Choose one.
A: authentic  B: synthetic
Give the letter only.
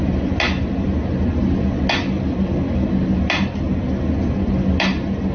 A